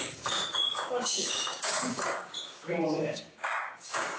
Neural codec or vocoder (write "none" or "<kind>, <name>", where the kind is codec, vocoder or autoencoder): codec, DAC